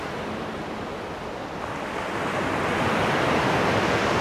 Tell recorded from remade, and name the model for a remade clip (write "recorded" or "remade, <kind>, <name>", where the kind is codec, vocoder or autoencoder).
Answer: recorded